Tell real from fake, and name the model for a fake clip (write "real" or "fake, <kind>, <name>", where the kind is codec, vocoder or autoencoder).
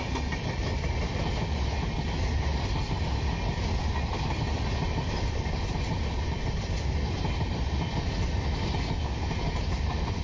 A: real